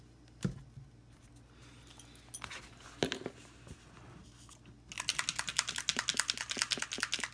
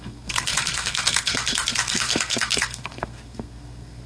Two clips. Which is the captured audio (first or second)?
first